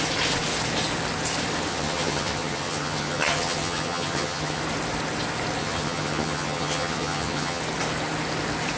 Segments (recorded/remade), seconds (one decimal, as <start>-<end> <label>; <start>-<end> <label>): 0.0-1.7 recorded; 1.7-4.6 remade; 4.6-5.6 recorded; 5.6-7.6 remade; 7.6-8.8 recorded